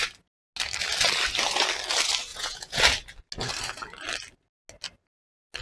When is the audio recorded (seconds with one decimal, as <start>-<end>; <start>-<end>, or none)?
0.0-2.3; 2.8-5.6